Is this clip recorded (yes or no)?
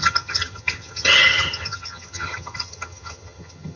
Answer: no